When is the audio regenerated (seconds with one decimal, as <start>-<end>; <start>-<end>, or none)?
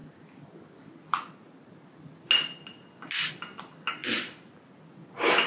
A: none